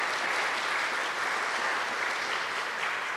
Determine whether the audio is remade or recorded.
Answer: recorded